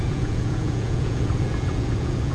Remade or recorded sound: remade